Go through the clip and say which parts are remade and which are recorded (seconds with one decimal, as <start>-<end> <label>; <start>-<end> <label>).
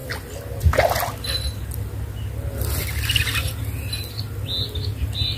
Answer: 0.0-5.4 recorded